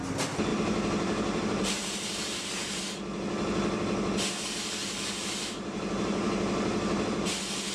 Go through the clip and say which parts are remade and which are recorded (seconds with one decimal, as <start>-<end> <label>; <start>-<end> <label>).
0.0-0.5 recorded; 0.5-2.8 remade; 2.8-4.8 recorded; 4.8-7.3 remade; 7.3-7.7 recorded

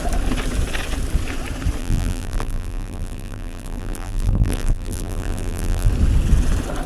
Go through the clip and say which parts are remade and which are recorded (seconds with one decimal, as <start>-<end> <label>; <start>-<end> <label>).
0.0-1.8 recorded; 1.8-5.9 remade; 5.9-6.9 recorded

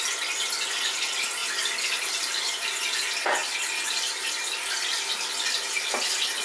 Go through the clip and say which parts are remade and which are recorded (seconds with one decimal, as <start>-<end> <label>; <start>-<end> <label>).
0.0-1.4 recorded; 1.4-2.2 remade; 2.2-6.4 recorded